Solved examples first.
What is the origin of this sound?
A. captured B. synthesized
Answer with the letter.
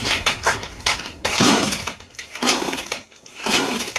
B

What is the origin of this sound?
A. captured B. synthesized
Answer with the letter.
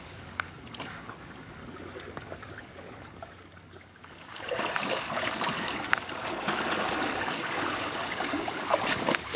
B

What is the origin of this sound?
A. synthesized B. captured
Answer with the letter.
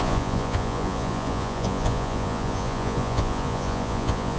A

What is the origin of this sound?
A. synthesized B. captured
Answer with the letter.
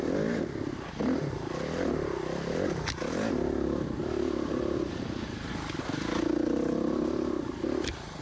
B